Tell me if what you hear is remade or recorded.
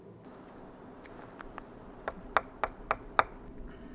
recorded